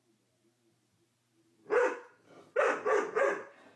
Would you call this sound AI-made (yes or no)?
no